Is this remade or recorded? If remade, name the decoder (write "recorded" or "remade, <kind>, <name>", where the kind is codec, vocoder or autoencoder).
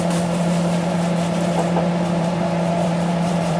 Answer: remade, vocoder, BigVGAN v2